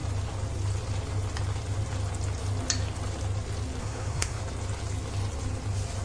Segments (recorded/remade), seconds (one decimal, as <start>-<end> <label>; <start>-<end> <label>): 0.0-3.8 recorded; 3.8-4.4 remade; 4.4-6.0 recorded

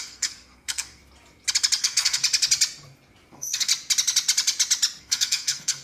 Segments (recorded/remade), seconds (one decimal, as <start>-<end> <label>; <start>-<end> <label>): 0.0-1.0 remade; 1.0-1.8 recorded; 1.8-2.2 remade; 2.2-3.3 recorded; 3.3-3.7 remade; 3.7-5.0 recorded; 5.0-5.8 remade